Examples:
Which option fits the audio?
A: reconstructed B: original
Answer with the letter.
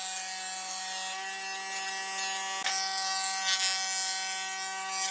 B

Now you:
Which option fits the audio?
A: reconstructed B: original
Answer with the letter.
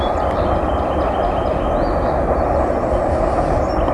B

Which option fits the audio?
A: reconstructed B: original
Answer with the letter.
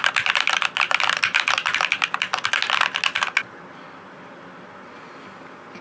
B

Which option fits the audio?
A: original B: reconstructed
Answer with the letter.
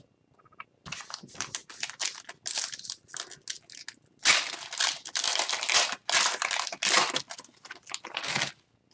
A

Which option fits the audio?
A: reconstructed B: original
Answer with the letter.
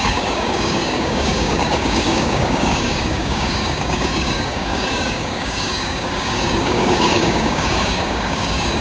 A